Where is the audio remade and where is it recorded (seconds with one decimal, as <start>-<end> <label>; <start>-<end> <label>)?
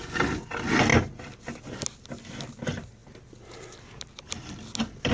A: 0.0-5.1 recorded